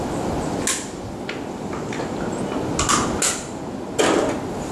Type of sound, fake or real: real